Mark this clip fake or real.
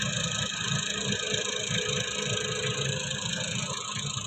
real